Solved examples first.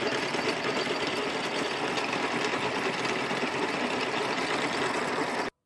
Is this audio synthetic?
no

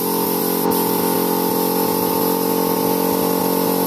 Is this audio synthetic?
no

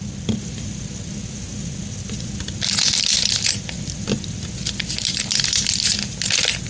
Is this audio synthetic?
no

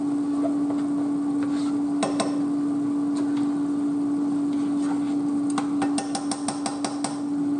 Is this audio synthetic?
no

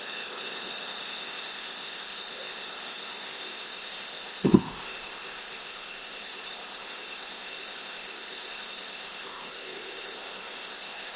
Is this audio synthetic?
yes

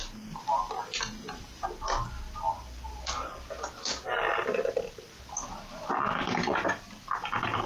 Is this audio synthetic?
no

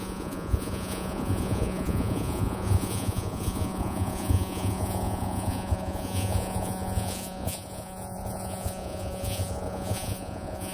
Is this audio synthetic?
yes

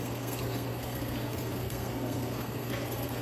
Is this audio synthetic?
yes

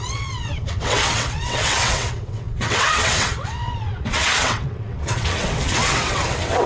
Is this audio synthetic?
yes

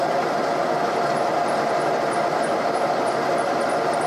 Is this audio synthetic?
yes